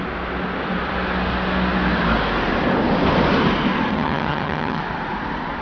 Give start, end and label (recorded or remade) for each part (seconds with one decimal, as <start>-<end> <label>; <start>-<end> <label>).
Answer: 0.0-3.9 recorded; 3.9-4.8 remade; 4.8-5.6 recorded

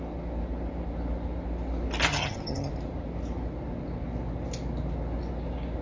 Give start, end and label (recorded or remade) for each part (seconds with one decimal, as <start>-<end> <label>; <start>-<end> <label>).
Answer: 0.0-2.1 recorded; 2.1-2.7 remade; 2.7-5.8 recorded

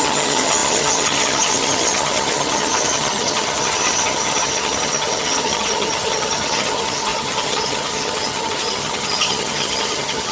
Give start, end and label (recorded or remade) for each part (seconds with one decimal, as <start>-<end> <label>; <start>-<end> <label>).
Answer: 0.0-10.3 remade